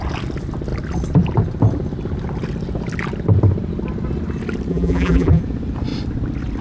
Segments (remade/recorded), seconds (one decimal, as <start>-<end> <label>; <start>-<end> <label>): 0.0-4.7 recorded; 4.7-5.4 remade; 5.4-6.6 recorded